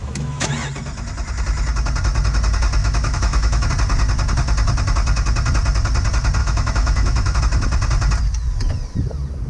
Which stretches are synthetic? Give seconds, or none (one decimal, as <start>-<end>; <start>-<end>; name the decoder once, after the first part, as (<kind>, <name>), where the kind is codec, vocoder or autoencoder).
0.0-0.5 (autoencoder, DAC-VAE); 2.8-3.7; 6.4-7.4